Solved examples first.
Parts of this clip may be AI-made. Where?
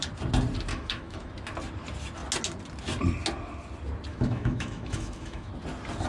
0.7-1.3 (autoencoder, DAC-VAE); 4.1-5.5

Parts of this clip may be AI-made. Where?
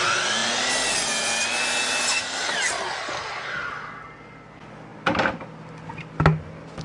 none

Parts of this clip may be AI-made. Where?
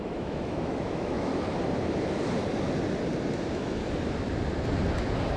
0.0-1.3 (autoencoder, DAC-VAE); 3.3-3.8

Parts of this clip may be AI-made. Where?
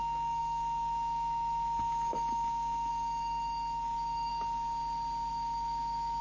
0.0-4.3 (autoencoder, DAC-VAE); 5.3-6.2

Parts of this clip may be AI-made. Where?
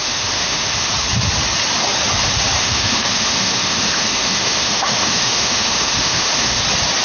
0.0-0.9 (autoencoder, DAC-VAE); 2.6-6.6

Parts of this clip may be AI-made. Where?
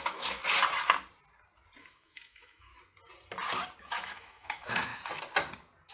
0.0-0.4 (autoencoder, DAC-VAE); 1.8-2.7; 3.8-4.9